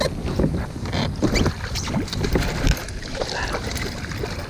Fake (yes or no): yes